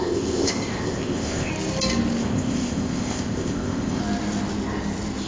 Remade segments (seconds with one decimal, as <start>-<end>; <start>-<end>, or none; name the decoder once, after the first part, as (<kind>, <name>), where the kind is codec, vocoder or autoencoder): 0.0-1.5 (codec, ZipCodec); 2.2-4.0